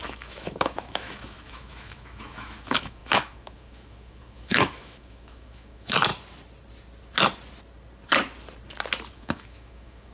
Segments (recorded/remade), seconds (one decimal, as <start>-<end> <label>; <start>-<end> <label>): 0.0-6.1 remade; 6.1-9.1 recorded; 9.1-10.1 remade